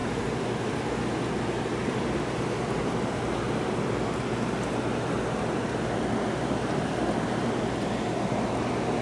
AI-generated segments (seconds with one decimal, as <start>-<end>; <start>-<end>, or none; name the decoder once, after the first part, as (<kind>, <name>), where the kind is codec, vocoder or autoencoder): 0.0-0.7 (vocoder, BigVGAN v2); 1.8-2.8